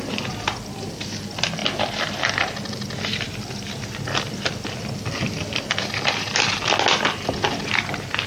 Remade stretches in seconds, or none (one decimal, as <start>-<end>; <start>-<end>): none